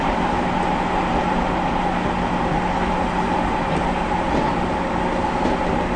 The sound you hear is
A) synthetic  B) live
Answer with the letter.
B